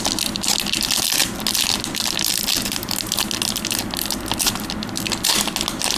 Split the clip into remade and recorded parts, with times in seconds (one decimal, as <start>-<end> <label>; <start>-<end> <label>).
0.0-6.0 recorded